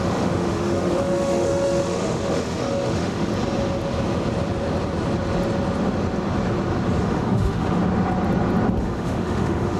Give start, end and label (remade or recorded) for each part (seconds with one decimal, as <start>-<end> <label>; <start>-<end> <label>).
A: 0.0-3.3 remade; 3.3-7.0 recorded; 7.0-7.8 remade; 7.8-8.8 recorded; 8.8-9.8 remade